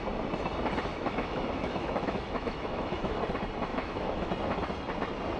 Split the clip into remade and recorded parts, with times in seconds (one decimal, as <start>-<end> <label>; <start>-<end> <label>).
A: 0.0-0.9 recorded; 0.9-3.2 remade; 3.2-3.7 recorded; 3.7-4.3 remade; 4.3-5.4 recorded